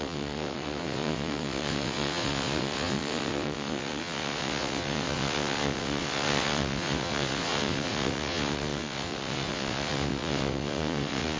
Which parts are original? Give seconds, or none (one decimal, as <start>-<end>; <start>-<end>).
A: none